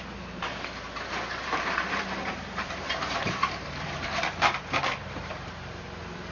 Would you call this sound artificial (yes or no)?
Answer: yes